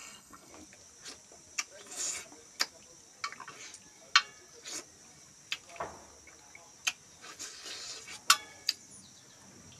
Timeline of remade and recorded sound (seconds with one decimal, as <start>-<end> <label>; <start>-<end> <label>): 0.0-0.5 remade; 0.5-9.8 recorded